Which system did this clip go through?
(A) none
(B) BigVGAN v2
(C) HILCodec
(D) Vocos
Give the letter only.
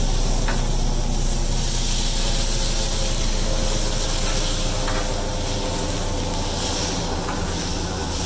A